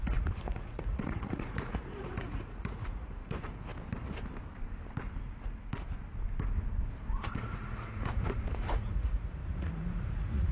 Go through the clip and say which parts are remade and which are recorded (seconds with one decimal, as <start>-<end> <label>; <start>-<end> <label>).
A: 0.0-3.7 remade; 3.7-7.2 recorded; 7.2-10.5 remade